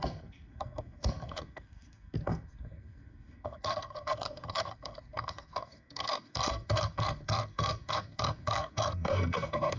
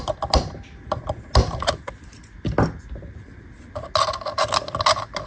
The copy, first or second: first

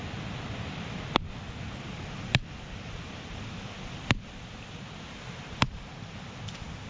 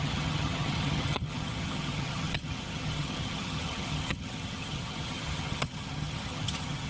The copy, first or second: second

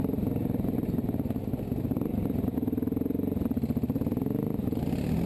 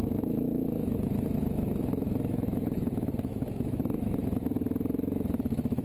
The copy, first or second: second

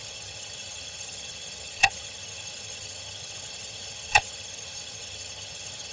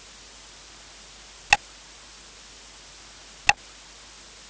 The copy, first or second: first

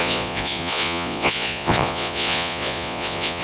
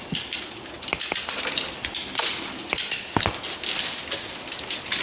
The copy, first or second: first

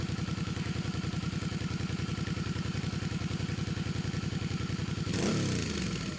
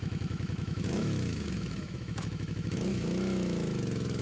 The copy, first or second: second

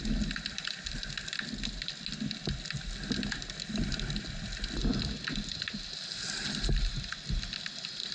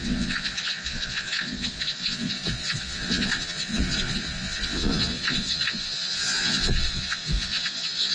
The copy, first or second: second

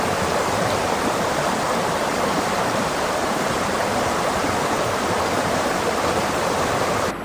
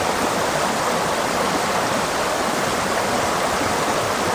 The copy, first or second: first